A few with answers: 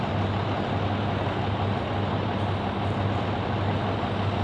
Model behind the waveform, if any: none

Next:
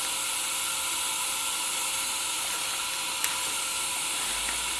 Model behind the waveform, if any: none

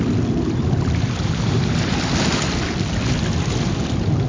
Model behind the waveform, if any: none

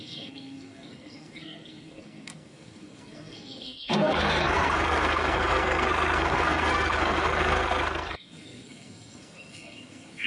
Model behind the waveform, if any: codec, SNAC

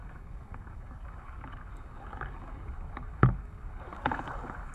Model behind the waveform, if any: codec, DAC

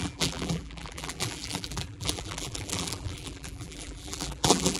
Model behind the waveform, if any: vocoder, BigVGAN v2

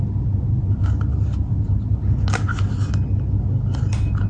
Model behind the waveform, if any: none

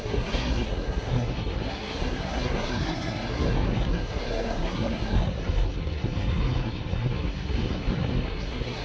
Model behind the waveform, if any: codec, SNAC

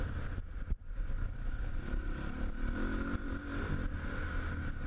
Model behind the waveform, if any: none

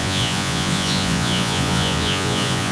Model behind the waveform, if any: vocoder, Vocos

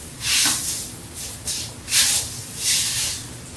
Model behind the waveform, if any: none